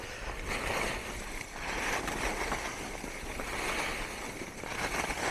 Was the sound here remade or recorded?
recorded